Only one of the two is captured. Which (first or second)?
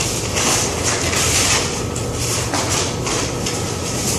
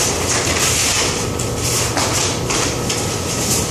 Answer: second